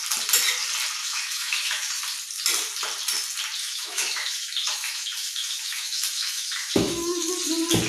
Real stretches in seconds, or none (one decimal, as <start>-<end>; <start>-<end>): 0.0-1.0; 2.0-3.6; 7.3-7.9